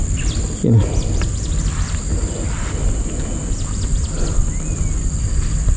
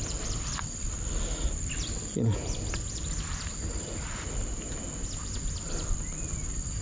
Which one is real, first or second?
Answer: first